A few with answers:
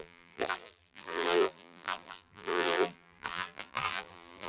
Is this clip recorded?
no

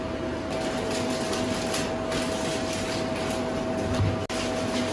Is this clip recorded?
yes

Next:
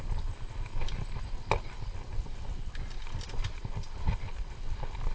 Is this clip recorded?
yes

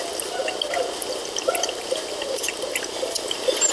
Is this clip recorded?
yes